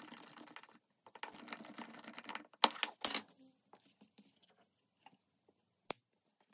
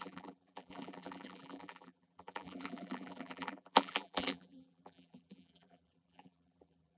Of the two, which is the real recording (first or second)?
first